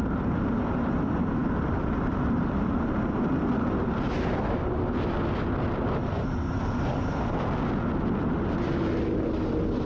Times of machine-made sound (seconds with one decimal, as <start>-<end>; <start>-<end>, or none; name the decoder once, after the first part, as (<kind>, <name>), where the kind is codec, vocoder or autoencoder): none